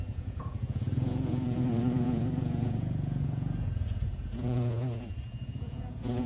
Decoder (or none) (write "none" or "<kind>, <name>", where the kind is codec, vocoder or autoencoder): vocoder, Vocos